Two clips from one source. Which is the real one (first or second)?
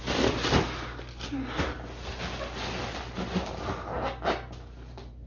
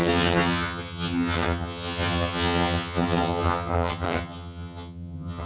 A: first